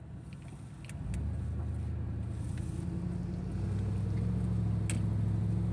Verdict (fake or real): real